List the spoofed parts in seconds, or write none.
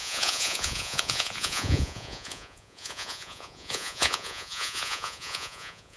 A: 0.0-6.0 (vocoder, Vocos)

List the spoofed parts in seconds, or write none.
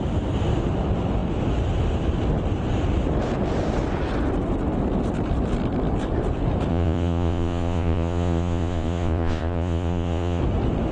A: 6.7-10.4 (vocoder, Vocos)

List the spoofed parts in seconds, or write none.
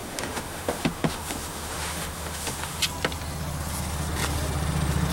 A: 0.0-2.8 (autoencoder, DAC-VAE)